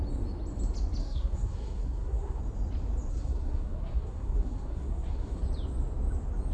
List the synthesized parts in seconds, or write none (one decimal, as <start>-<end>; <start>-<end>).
1.0-2.4; 3.1-5.4